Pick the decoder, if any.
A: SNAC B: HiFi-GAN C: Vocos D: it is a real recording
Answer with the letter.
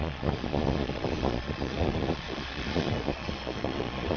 C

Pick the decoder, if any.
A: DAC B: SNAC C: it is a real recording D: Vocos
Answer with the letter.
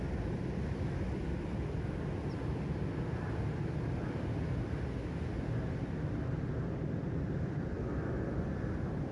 C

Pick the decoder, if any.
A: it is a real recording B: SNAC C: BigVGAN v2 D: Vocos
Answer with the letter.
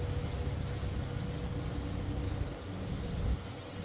A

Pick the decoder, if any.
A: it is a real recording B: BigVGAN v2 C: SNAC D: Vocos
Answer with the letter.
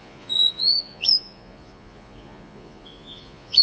D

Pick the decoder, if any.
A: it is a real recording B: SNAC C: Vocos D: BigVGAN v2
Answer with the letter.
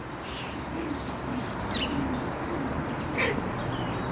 A